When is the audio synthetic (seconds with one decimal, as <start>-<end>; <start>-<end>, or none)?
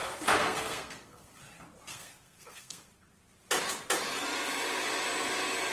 0.0-1.4; 1.9-2.9